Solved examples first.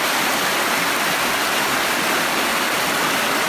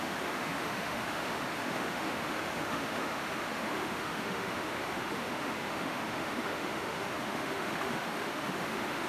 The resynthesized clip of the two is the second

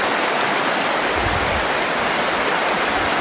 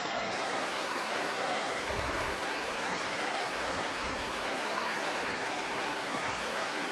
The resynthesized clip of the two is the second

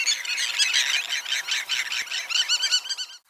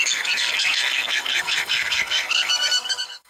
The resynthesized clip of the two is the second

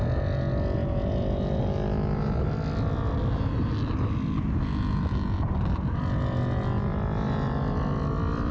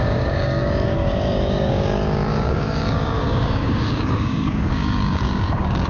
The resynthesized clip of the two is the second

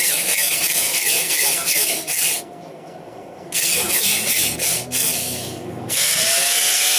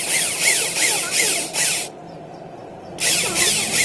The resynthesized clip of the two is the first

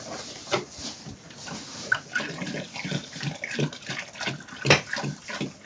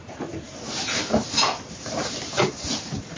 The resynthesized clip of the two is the second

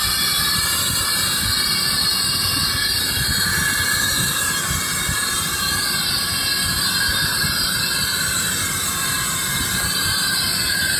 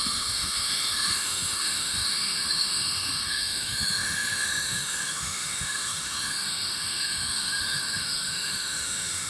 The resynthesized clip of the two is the second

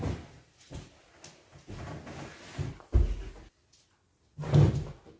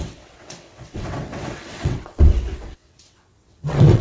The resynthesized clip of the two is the second